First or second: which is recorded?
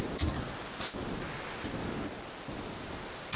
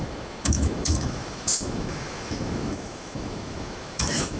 first